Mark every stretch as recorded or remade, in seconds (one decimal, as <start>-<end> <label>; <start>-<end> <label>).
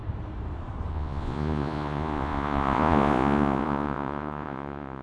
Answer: 0.0-0.9 recorded; 0.9-5.0 remade